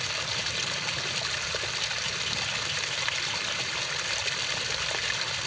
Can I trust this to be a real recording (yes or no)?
yes